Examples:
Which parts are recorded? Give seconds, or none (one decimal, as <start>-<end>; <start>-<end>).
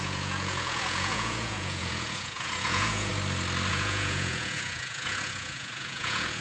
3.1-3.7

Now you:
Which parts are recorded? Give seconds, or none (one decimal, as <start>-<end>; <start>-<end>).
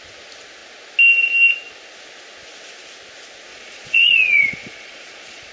0.0-3.5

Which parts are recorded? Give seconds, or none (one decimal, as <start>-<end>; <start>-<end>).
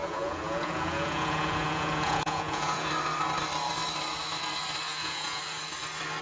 2.9-4.9; 5.4-6.2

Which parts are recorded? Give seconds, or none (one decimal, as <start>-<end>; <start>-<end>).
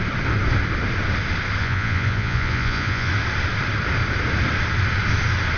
0.0-1.6; 3.1-5.6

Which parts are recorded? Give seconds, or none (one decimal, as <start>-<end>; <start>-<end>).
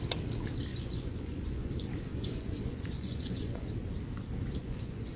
0.0-0.7; 1.7-2.1; 3.7-4.6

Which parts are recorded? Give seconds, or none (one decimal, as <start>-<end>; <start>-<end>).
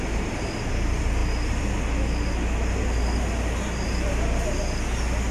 0.0-5.3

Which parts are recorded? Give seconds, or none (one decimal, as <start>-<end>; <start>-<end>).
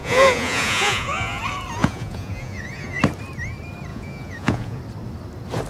1.4-1.8; 3.0-3.9; 4.8-5.7